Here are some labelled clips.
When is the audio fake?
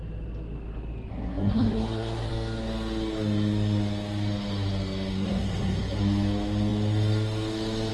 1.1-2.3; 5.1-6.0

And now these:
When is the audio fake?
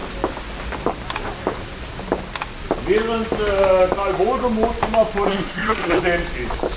5.3-6.0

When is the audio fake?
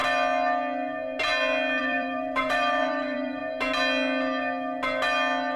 1.8-3.4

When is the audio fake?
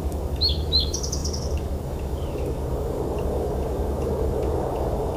0.0-5.2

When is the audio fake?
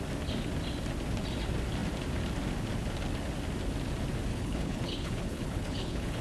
4.3-6.2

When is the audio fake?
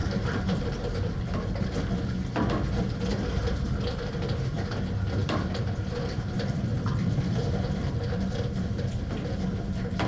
0.0-1.0; 3.1-4.8; 5.2-8.9